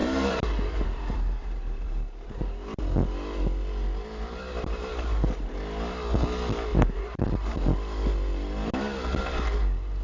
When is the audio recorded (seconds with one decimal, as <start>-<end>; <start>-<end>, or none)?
2.4-6.7; 7.2-10.0